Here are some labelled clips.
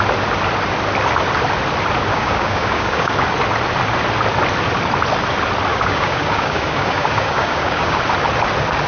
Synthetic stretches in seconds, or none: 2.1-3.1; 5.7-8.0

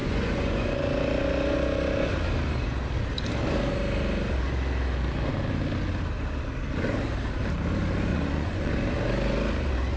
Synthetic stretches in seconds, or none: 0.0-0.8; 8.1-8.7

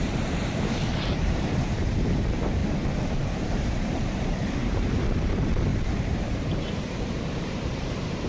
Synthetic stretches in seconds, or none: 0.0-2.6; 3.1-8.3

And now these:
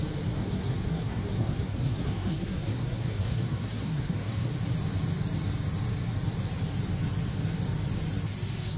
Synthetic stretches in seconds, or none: 0.4-4.5

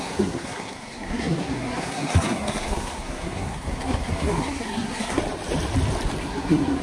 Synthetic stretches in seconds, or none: 0.0-5.2; 6.2-6.8